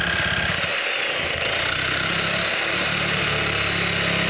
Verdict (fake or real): real